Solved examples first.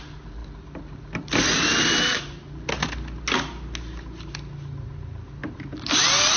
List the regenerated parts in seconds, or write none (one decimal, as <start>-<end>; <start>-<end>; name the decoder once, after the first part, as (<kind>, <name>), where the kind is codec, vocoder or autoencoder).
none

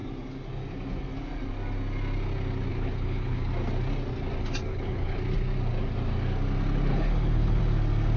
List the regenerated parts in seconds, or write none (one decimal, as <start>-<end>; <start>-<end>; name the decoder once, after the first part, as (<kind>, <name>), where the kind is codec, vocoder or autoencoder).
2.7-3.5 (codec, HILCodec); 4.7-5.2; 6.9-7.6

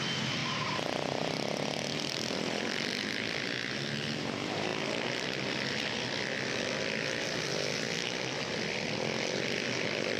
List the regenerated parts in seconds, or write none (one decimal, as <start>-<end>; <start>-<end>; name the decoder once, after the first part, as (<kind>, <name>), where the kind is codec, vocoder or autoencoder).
0.4-3.4 (vocoder, BigVGAN v2)

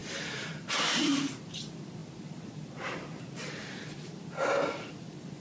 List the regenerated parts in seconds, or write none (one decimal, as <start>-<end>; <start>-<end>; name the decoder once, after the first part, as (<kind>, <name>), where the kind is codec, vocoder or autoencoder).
0.0-1.4 (vocoder, BigVGAN v2)

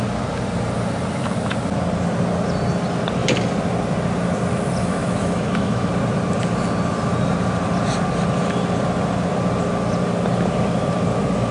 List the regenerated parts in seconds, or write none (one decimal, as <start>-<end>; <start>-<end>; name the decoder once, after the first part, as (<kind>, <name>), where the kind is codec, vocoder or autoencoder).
4.8-5.9 (autoencoder, DAC-VAE)

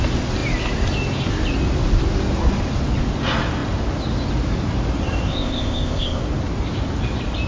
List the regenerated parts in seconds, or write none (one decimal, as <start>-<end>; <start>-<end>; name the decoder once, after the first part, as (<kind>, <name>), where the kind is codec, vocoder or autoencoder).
5.3-6.2 (codec, ZipCodec)

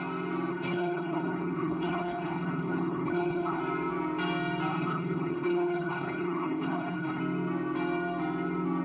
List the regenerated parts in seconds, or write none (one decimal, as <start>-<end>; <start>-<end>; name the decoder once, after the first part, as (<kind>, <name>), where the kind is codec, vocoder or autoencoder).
0.5-3.6 (codec, HILCodec); 4.7-7.2

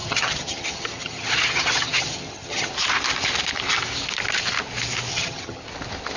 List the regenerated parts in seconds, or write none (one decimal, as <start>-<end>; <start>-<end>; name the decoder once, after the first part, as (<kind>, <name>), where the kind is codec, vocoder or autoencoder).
0.0-2.7 (vocoder, HiFi-GAN); 5.1-5.6